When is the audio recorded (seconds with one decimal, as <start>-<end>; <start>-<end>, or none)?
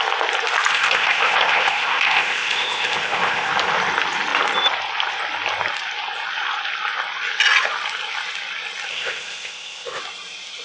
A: 0.0-0.7; 3.5-8.9; 10.0-10.6